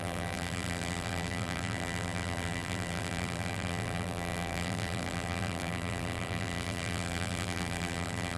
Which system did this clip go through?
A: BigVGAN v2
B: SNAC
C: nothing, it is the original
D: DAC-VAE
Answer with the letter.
A